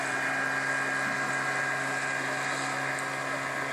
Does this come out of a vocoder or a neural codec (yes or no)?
no